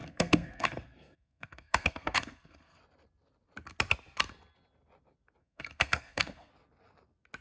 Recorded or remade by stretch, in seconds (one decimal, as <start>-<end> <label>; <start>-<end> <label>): 0.0-2.8 remade; 2.8-5.4 recorded; 5.4-6.5 remade; 6.5-7.4 recorded